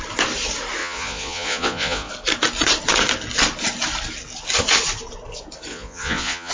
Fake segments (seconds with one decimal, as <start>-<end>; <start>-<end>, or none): 0.8-2.1; 5.7-6.5